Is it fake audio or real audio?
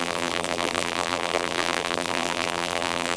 fake